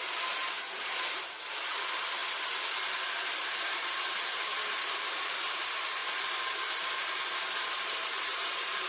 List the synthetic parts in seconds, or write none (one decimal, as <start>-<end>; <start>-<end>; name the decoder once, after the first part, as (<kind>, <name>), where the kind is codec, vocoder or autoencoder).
0.0-2.2 (vocoder, BigVGAN v2); 3.1-6.0; 7.8-8.9